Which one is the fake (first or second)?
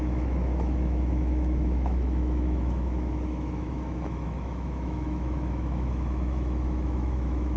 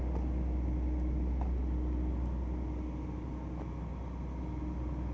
first